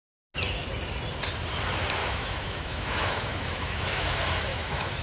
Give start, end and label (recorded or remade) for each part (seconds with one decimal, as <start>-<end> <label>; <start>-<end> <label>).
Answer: 0.0-2.0 recorded; 2.0-4.1 remade; 4.1-4.5 recorded; 4.5-5.0 remade